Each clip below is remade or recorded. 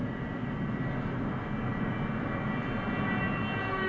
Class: recorded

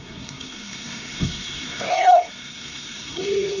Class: remade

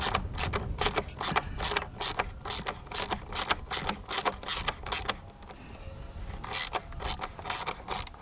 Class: recorded